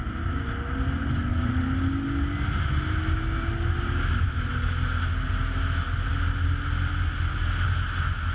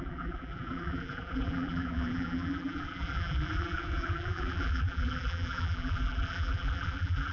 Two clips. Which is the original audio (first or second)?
first